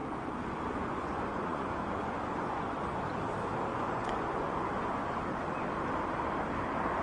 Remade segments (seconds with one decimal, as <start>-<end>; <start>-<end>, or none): 0.0-3.0; 3.7-5.2